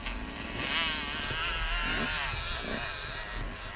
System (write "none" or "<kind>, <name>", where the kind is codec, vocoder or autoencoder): none